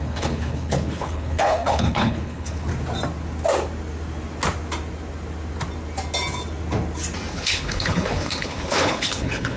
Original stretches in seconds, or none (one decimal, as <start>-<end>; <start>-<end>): 2.7-7.3